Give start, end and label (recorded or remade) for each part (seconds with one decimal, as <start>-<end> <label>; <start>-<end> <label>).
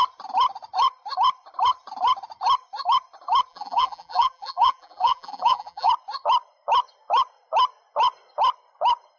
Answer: 0.0-3.5 recorded; 3.5-5.9 remade; 5.9-9.2 recorded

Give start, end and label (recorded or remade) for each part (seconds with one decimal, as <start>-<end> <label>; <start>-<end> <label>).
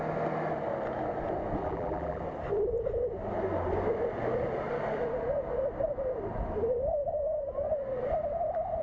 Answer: 0.0-1.6 recorded; 1.6-2.2 remade; 2.2-8.8 recorded